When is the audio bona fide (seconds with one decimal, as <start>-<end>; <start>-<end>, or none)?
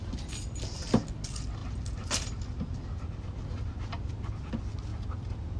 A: 0.0-4.9